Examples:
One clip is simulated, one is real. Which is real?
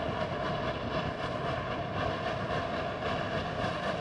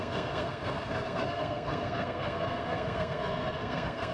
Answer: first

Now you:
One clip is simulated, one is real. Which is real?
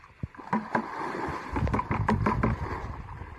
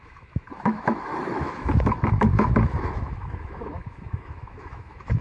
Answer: first